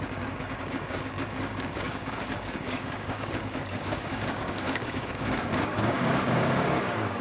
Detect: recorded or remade remade